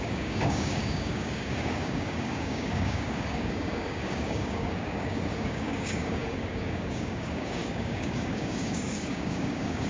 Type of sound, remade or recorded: remade